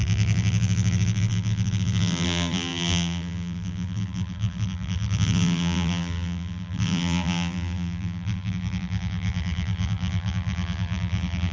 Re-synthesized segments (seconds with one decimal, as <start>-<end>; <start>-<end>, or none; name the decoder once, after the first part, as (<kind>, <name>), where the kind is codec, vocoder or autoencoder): 0.0-11.5 (vocoder, BigVGAN v2)